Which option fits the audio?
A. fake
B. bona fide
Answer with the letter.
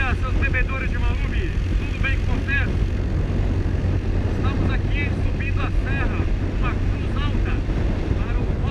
B